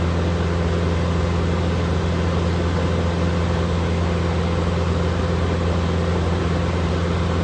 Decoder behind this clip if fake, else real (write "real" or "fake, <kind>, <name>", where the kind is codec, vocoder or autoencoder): real